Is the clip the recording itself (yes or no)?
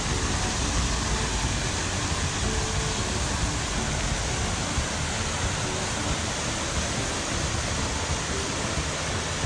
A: yes